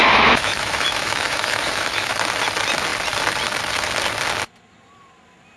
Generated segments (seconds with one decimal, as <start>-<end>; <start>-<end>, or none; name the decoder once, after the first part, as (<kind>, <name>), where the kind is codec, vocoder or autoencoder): 0.0-2.1 (autoencoder, DAC-VAE)